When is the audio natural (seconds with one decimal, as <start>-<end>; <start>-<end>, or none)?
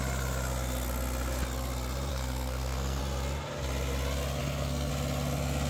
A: 0.0-2.1; 3.0-4.4; 4.9-5.7